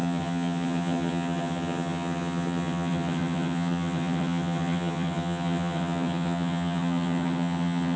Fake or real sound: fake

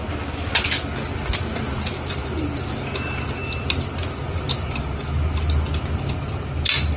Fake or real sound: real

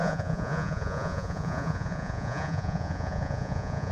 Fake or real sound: fake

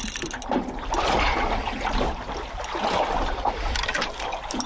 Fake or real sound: real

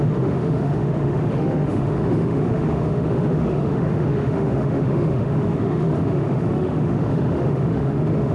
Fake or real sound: fake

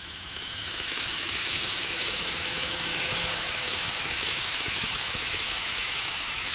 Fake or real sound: fake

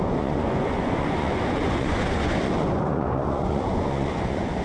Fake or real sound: fake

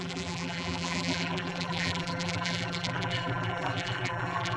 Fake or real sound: fake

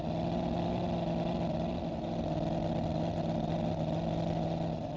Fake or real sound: real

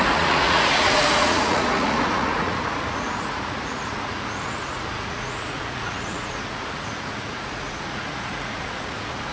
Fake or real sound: fake